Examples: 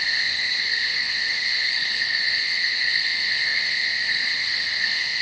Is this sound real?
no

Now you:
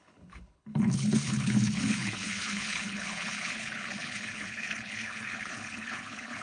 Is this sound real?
no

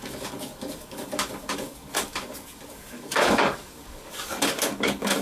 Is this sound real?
no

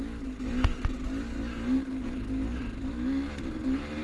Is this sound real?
yes